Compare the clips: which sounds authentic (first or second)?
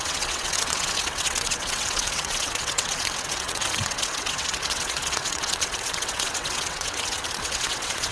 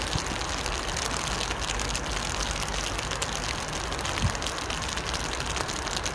second